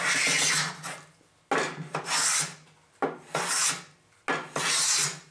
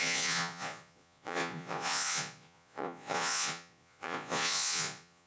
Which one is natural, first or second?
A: first